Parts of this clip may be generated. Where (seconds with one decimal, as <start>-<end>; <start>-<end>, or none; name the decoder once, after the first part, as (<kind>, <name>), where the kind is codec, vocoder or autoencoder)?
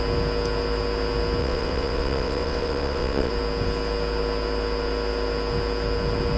1.4-3.3 (vocoder, WaveNeXt)